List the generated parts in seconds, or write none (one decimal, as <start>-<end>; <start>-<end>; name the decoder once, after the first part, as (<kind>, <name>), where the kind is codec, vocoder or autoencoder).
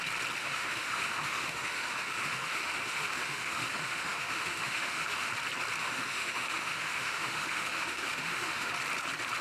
0.4-5.3 (autoencoder, DAC-VAE); 5.8-8.7